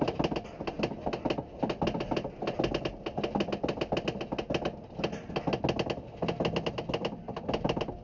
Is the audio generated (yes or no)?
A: no